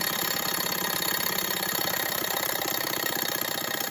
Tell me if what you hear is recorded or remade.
recorded